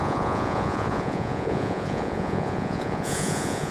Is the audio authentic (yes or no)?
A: no